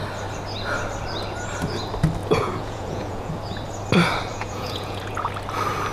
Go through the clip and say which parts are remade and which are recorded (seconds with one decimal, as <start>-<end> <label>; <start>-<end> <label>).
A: 0.0-2.2 recorded; 2.2-3.3 remade; 3.3-4.3 recorded; 4.3-5.3 remade; 5.3-5.9 recorded